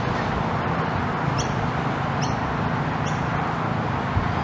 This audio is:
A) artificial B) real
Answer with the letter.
B